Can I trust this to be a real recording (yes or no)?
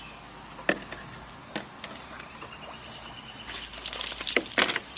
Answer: yes